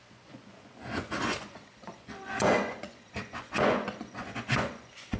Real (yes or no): no